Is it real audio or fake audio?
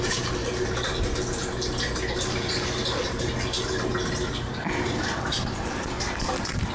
real